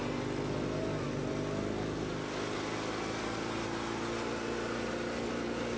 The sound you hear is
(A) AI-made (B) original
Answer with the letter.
B